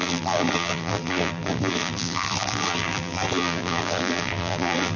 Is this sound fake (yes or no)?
yes